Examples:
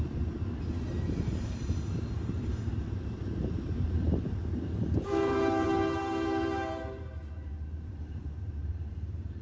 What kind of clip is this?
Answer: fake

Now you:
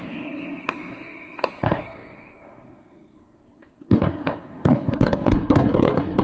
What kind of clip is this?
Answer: fake